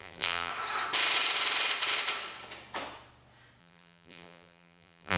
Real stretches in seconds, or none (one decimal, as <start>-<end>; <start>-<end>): 0.5-3.6